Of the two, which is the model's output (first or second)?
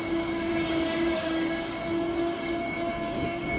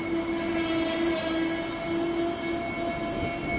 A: first